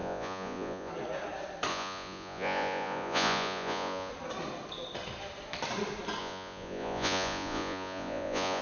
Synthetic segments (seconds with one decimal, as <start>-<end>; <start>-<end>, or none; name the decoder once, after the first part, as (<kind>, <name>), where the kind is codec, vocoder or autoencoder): 0.0-0.9 (vocoder, Vocos); 1.7-4.1; 6.2-8.6